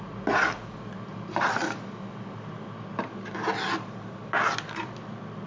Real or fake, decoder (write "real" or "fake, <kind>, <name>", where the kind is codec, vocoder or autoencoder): real